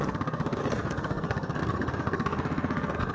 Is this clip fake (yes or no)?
yes